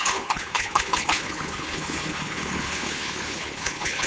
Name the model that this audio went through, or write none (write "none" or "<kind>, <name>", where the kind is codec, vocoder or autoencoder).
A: codec, HILCodec